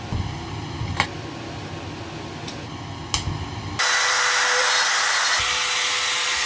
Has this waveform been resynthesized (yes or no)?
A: no